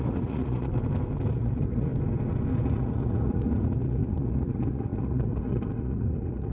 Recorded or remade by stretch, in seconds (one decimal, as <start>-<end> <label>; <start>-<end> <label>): 0.0-0.7 remade; 0.7-1.3 recorded; 1.3-1.9 remade; 1.9-2.6 recorded; 2.6-6.5 remade